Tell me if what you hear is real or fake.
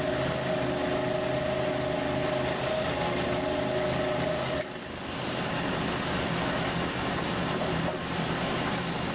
real